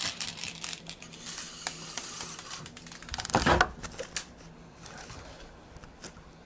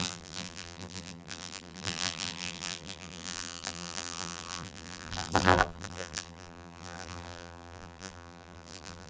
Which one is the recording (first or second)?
first